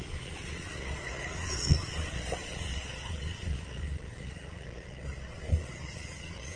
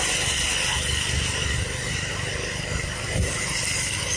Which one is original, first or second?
second